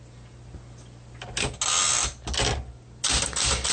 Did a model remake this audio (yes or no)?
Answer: no